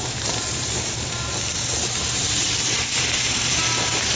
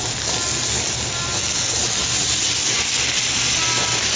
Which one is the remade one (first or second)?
first